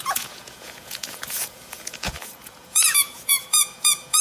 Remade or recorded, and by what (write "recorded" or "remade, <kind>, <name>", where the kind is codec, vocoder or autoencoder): remade, vocoder, Vocos